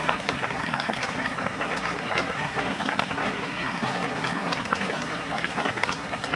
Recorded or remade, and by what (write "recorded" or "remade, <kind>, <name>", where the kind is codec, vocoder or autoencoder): remade, codec, SNAC